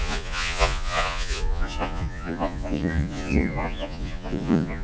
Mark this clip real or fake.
fake